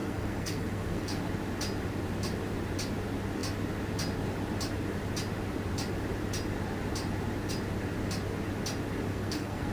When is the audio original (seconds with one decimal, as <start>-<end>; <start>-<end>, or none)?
1.2-9.1